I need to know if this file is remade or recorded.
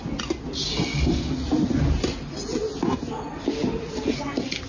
recorded